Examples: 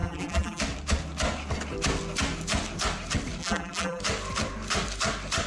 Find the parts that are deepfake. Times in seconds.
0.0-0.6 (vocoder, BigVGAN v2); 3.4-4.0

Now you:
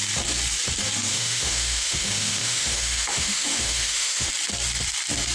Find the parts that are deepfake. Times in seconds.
1.1-4.3 (autoencoder, DAC-VAE)